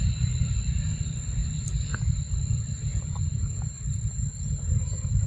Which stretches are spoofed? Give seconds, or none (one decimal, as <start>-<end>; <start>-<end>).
none